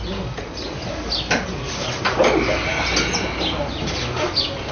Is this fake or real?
real